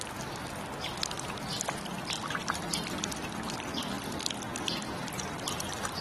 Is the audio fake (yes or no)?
no